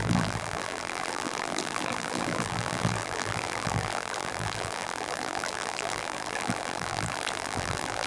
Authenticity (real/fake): fake